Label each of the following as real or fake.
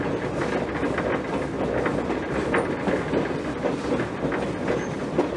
real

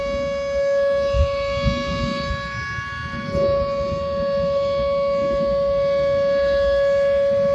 real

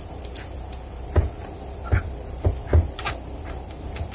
real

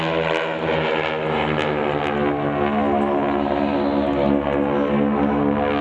real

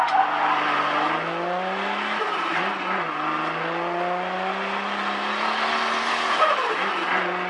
real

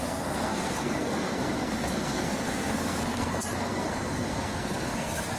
fake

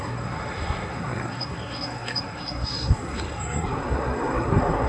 fake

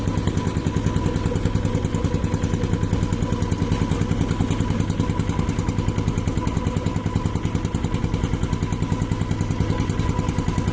real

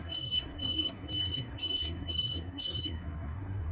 fake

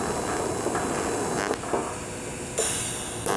real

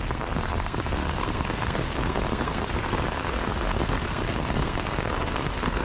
fake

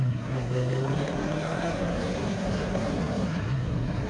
fake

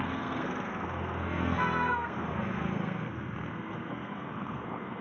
fake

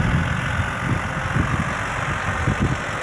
real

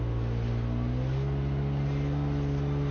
real